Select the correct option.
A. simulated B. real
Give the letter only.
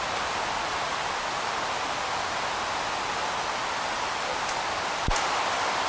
B